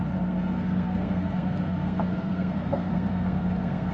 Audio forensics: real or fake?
fake